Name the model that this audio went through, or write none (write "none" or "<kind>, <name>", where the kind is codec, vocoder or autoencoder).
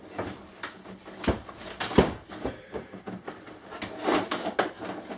none